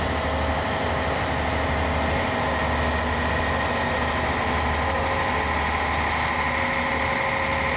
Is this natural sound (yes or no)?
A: yes